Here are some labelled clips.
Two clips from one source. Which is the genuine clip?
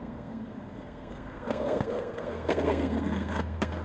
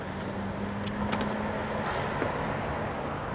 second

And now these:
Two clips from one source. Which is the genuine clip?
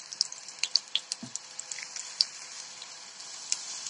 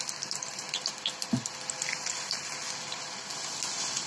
second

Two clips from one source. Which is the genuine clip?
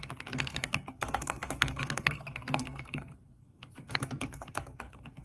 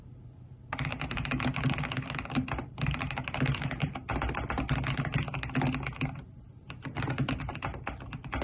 second